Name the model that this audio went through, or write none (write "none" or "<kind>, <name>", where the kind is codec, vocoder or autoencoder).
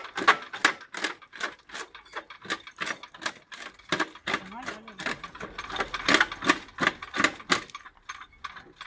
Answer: none